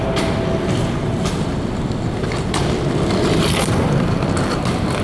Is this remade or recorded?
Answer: recorded